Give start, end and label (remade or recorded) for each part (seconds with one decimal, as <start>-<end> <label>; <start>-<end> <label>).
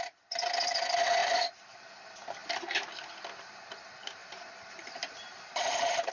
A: 0.0-1.2 recorded; 1.2-1.8 remade; 1.8-4.2 recorded; 4.2-6.1 remade